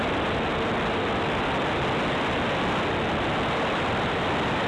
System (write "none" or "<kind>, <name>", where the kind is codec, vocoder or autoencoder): none